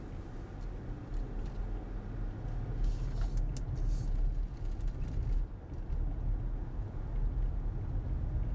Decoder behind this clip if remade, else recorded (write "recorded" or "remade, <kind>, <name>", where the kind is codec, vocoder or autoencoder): recorded